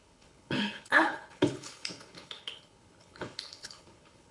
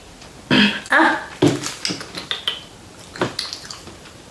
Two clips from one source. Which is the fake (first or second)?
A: first